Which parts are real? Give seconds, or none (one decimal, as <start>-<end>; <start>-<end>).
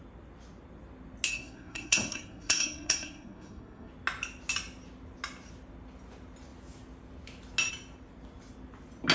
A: 0.0-1.3; 3.9-9.1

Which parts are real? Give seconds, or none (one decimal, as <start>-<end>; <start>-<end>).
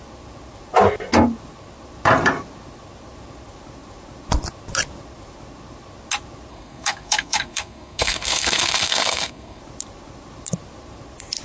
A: 0.0-6.5; 9.6-11.4